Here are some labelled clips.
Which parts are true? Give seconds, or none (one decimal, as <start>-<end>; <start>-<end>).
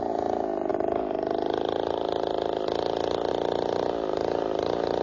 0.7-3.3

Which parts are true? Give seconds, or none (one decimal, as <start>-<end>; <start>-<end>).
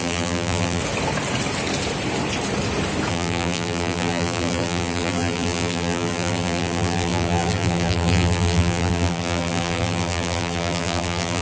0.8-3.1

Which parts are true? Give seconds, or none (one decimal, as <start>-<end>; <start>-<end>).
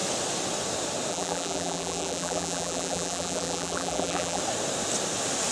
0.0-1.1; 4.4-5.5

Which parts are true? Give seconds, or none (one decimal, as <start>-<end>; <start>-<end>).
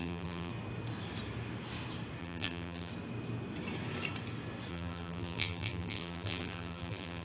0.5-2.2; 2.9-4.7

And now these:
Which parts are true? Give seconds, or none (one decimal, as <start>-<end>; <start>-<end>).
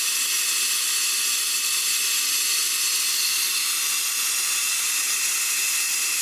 0.0-2.6; 3.1-6.2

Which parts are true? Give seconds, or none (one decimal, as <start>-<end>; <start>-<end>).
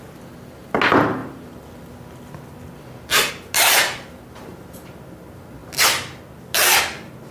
0.0-7.3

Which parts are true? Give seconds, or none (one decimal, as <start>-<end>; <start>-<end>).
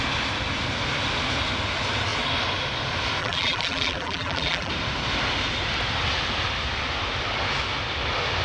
0.0-3.2; 4.7-8.4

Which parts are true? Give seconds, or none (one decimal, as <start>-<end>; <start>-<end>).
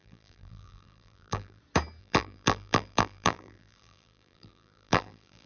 1.6-2.0